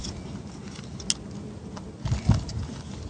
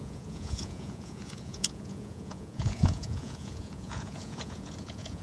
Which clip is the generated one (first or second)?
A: second